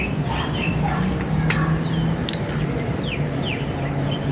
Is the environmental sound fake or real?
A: real